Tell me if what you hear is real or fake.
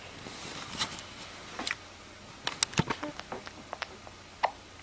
real